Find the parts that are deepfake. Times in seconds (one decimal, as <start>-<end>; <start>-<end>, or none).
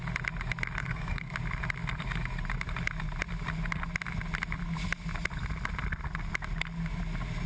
0.8-1.3